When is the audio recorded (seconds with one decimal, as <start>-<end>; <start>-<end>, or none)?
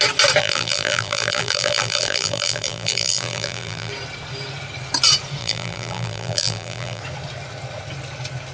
0.0-0.4; 3.9-5.4; 7.0-8.5